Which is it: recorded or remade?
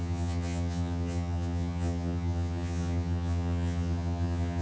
remade